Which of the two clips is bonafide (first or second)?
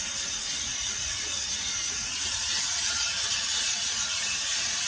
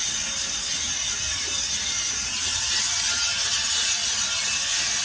second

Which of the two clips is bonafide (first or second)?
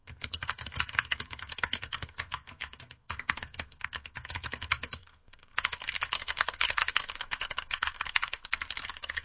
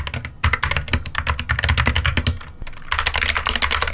second